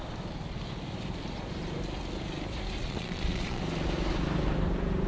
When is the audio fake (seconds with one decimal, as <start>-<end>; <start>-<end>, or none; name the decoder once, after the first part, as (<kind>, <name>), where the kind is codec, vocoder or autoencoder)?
2.8-3.6 (vocoder, Vocos)